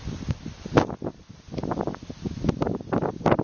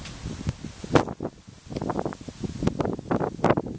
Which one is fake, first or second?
first